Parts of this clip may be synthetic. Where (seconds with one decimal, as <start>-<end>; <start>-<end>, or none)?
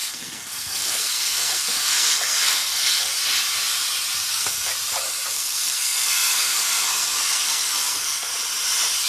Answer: 0.0-3.1; 4.3-4.7; 5.3-8.3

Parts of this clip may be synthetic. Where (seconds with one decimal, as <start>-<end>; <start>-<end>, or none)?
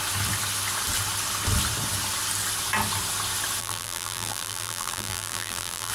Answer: 3.6-5.9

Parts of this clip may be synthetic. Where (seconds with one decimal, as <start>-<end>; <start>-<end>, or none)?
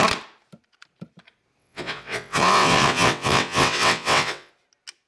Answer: 1.6-4.5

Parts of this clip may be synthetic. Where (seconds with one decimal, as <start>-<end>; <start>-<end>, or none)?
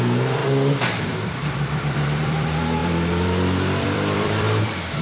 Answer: 0.0-0.4; 1.0-5.0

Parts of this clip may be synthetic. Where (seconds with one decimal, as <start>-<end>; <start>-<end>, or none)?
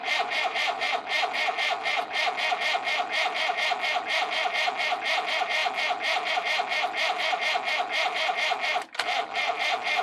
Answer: 0.0-0.8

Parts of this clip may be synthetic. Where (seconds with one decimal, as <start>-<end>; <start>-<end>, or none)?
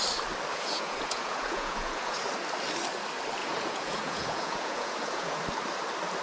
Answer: 0.5-2.2; 3.4-5.4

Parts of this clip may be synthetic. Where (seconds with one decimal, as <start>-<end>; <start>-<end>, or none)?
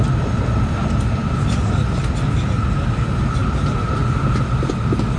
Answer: none